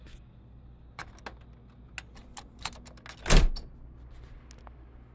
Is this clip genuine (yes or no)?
yes